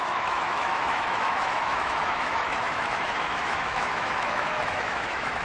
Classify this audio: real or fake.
fake